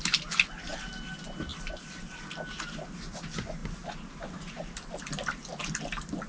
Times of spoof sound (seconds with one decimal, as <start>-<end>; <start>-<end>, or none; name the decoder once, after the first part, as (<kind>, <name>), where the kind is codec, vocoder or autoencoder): none